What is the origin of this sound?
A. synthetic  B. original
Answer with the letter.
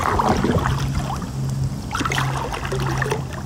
B